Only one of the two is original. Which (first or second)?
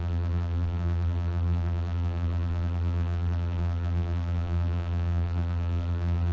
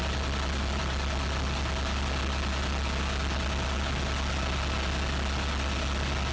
second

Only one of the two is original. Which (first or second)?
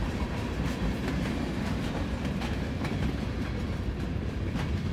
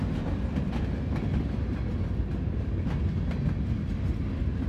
second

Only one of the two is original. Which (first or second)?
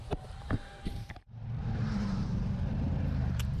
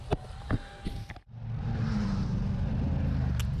second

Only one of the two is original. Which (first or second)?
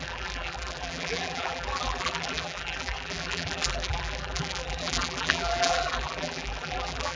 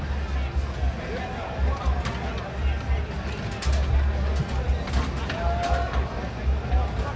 second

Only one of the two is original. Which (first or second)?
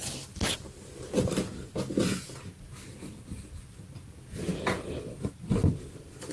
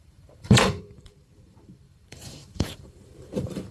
first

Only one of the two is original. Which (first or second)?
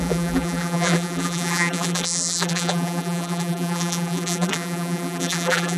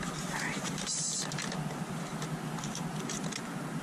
second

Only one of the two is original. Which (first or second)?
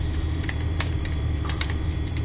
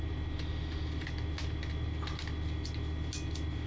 second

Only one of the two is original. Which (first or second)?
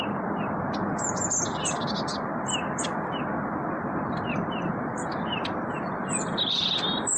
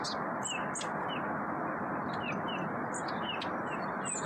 second